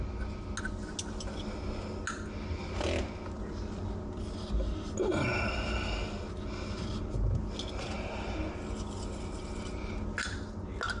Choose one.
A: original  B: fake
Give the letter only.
A